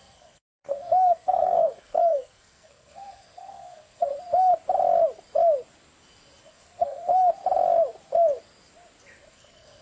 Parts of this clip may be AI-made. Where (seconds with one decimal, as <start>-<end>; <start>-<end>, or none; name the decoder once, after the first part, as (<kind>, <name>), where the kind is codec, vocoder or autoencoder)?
0.0-4.1 (codec, SNAC); 6.5-7.1; 9.3-9.8

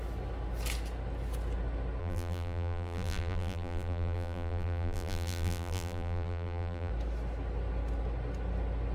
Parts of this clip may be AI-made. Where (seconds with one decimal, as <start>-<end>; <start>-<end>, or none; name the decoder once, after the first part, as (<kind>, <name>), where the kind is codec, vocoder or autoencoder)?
2.0-6.9 (vocoder, BigVGAN v2)

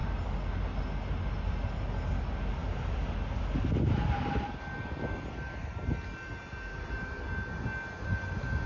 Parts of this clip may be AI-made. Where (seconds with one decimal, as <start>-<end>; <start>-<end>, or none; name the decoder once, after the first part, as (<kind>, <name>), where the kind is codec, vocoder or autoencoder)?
none

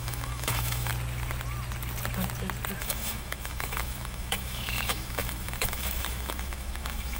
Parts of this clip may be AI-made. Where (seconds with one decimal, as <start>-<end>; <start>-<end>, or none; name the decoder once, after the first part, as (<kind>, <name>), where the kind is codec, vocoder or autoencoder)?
0.0-0.9 (autoencoder, DAC-VAE); 2.8-7.2

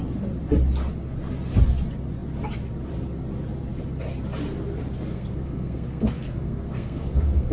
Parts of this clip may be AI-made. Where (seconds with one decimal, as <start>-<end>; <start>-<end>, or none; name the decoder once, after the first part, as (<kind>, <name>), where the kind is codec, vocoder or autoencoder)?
5.1-7.5 (codec, SNAC)

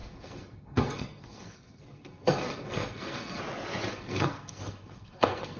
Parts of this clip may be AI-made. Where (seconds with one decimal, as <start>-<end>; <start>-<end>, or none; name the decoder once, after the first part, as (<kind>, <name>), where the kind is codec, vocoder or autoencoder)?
0.0-3.4 (codec, SNAC); 3.9-5.6

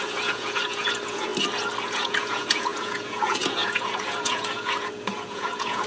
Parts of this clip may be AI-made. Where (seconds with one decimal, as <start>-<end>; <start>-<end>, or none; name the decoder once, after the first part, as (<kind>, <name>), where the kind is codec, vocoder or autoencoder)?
0.0-1.3 (vocoder, Vocos); 1.8-5.9